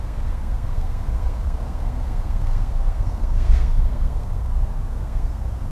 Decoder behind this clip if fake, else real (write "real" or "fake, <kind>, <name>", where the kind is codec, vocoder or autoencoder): fake, codec, SNAC